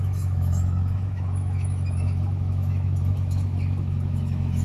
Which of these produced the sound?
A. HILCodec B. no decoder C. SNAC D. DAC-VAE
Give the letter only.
D